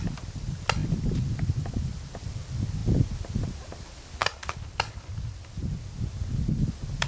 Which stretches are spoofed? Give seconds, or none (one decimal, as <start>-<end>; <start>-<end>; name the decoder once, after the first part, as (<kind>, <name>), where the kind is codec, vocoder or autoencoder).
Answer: none